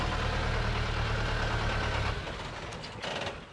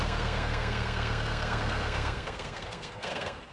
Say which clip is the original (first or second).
first